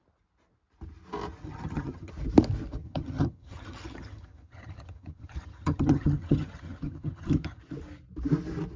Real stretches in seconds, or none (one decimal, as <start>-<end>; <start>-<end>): 0.0-1.4; 2.1-2.8; 7.6-8.8